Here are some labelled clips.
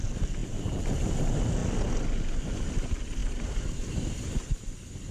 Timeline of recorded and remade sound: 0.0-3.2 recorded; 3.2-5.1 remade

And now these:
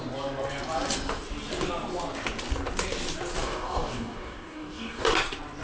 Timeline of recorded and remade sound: 0.0-3.4 recorded; 3.4-5.0 remade; 5.0-5.6 recorded

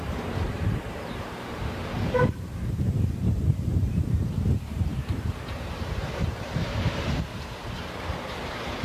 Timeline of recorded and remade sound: 0.0-1.8 remade; 1.8-2.7 recorded; 2.7-8.8 remade

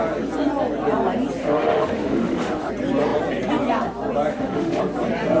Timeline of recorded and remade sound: 0.0-1.4 recorded; 1.4-2.7 remade; 2.7-4.3 recorded; 4.3-4.8 remade; 4.8-5.4 recorded

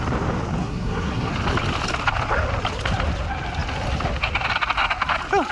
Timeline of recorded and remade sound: 0.0-0.6 recorded; 0.6-1.3 remade; 1.3-5.5 recorded